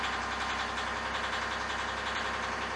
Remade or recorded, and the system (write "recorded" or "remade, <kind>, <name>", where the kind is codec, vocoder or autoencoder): recorded